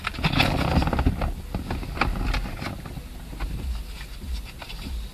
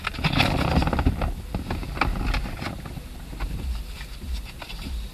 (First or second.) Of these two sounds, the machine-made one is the second